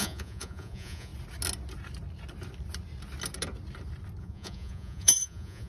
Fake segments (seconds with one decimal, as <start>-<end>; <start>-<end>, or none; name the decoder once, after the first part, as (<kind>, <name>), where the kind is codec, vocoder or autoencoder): 0.0-1.1 (vocoder, Vocos); 4.2-5.7